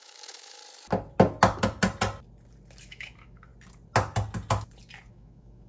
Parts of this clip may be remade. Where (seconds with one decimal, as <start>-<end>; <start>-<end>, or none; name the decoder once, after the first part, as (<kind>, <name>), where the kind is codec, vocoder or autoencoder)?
0.0-0.6 (autoencoder, DAC-VAE); 2.8-3.5; 5.1-5.7